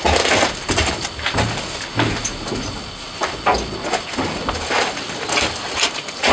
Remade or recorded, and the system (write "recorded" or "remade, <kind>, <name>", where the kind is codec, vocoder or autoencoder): recorded